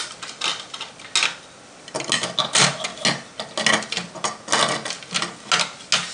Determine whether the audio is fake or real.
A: real